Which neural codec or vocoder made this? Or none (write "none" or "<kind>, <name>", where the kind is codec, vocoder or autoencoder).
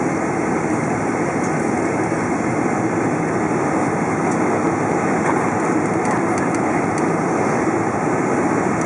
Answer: vocoder, BigVGAN v2